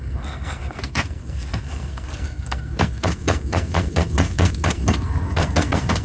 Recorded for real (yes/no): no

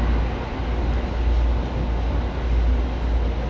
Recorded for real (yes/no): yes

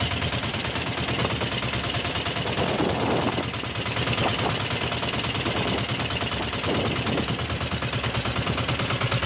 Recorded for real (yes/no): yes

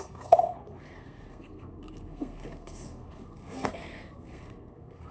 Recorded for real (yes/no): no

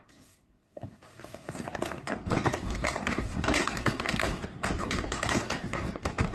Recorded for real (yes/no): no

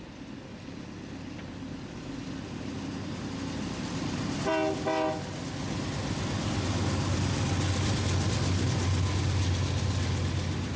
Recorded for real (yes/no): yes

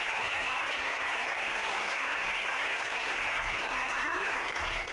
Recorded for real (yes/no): no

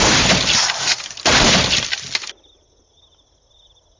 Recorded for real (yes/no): yes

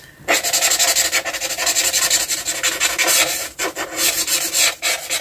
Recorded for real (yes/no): yes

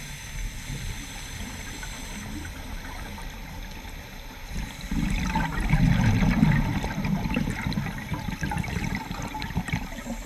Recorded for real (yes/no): yes